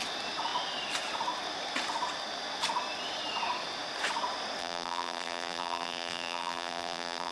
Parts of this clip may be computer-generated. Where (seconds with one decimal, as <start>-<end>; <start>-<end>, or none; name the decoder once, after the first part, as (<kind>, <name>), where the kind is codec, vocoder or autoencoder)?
4.6-7.3 (vocoder, BigVGAN v2)